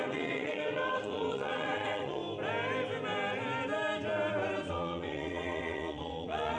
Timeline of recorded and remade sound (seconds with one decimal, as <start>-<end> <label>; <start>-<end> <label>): 0.0-2.2 remade; 2.2-4.7 recorded; 4.7-6.6 remade